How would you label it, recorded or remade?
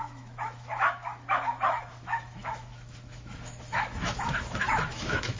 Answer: remade